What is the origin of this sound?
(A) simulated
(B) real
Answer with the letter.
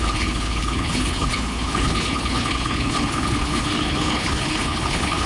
A